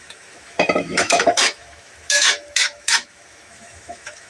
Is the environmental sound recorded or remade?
remade